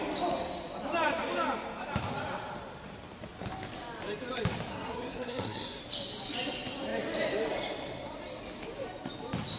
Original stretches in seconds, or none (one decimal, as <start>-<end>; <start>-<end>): 0.0-4.7; 5.8-9.6